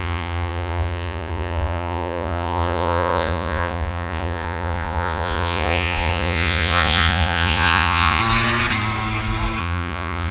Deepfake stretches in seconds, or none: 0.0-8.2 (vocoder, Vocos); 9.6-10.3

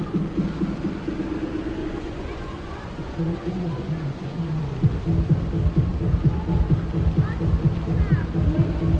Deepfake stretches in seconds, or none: 1.8-4.6 (vocoder, Vocos); 5.9-6.6

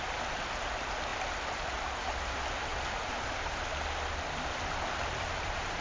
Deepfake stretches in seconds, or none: none

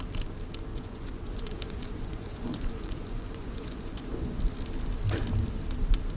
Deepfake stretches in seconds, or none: 0.7-4.4 (vocoder, Vocos)

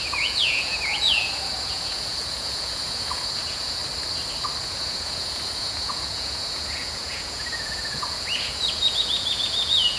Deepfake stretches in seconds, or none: 0.0-3.8 (vocoder, Vocos); 4.6-10.0

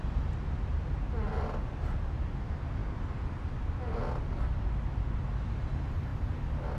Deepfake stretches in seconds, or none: none

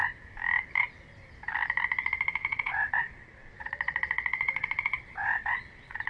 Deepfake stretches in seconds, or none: 2.4-6.1 (vocoder, Vocos)

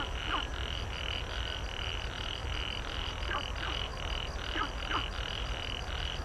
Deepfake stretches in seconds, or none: none